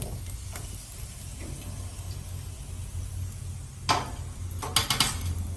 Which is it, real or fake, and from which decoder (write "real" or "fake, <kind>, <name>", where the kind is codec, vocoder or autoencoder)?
real